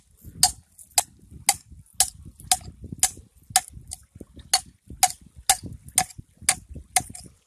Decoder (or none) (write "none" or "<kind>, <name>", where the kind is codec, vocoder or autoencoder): none